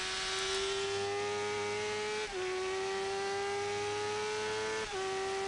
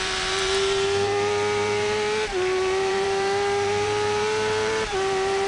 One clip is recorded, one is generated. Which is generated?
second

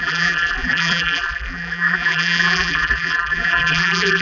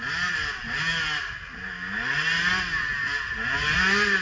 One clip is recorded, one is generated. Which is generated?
first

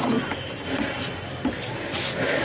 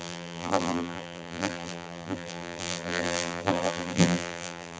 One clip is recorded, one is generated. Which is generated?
second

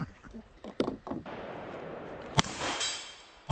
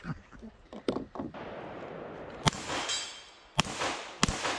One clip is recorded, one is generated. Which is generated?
first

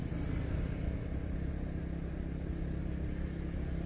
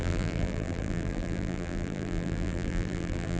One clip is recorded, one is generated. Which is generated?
second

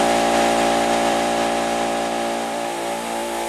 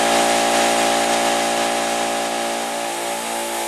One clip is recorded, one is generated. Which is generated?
first